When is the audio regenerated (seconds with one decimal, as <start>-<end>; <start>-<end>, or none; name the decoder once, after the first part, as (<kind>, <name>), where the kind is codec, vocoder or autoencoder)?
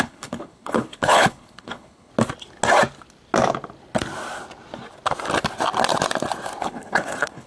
0.0-2.1 (codec, HILCodec); 6.6-7.5